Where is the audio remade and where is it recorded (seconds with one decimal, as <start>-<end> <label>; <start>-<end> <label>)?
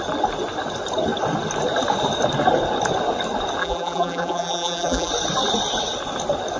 0.0-3.6 recorded; 3.6-5.1 remade; 5.1-6.6 recorded